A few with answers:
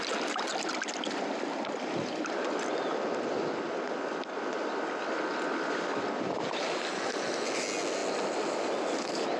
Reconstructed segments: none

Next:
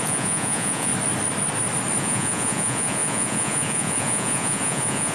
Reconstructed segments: 0.0-0.9 (vocoder, Vocos); 2.0-5.1

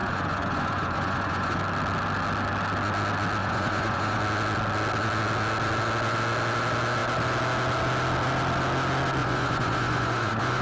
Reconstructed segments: 0.0-1.6 (vocoder, Vocos); 3.4-4.2; 9.2-10.6

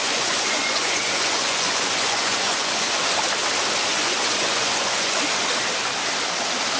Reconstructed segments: 0.0-3.0 (vocoder, Vocos); 3.9-5.2

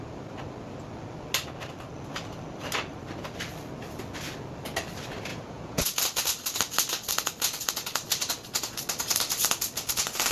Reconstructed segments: 5.3-6.0 (vocoder, Vocos)

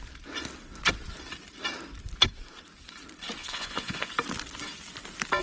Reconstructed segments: 3.4-4.1 (vocoder, Vocos)

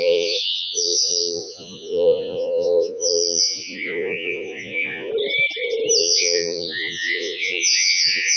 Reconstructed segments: 0.0-5.1 (vocoder, Vocos); 6.0-8.4